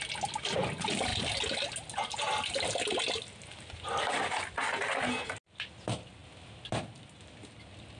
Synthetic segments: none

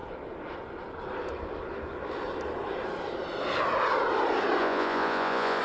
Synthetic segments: 4.6-5.6 (vocoder, Vocos)